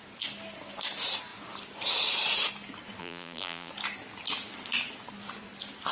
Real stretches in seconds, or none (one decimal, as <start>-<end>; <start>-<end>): 0.0-3.0; 3.7-5.9

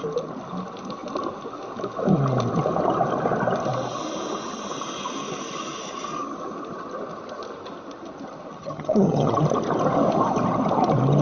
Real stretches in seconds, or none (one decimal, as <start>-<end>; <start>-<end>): 0.0-8.5; 9.3-11.2

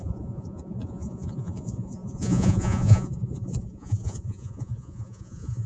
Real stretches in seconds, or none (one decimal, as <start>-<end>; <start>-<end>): none